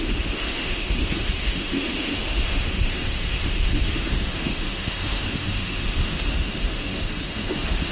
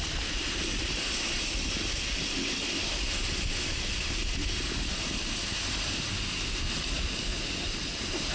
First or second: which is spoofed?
first